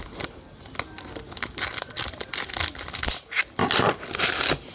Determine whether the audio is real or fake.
real